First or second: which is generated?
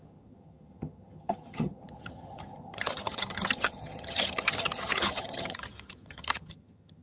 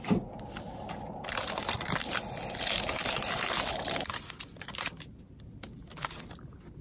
first